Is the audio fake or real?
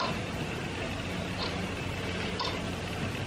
real